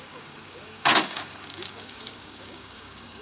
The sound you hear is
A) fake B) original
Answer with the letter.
A